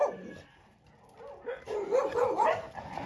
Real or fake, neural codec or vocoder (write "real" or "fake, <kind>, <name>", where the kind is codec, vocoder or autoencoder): real